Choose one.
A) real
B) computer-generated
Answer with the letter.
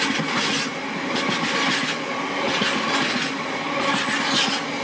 A